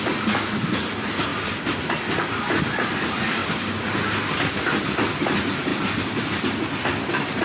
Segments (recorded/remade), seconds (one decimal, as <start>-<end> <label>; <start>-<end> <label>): 0.0-7.4 recorded